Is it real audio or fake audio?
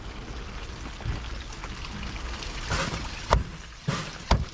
real